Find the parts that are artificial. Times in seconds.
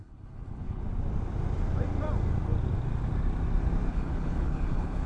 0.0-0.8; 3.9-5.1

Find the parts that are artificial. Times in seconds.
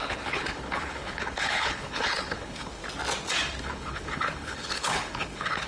0.0-2.8; 3.6-5.7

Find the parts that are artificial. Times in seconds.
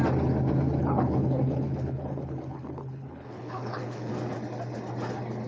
0.8-4.1